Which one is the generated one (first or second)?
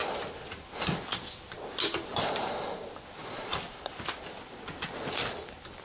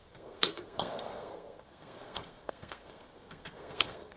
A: second